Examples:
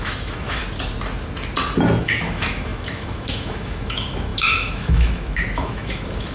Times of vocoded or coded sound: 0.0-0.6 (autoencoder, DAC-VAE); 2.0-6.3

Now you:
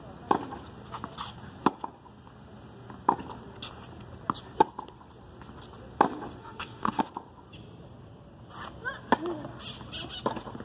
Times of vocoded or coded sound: 6.4-7.0 (autoencoder, DAC-VAE)